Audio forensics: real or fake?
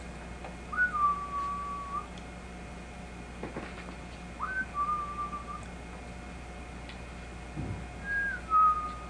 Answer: real